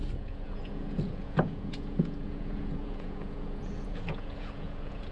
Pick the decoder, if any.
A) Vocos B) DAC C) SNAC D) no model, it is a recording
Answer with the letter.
A